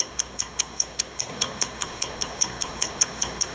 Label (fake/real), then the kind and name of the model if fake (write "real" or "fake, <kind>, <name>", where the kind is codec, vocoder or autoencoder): fake, codec, SNAC